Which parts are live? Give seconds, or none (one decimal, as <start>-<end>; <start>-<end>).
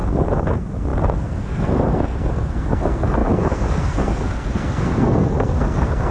none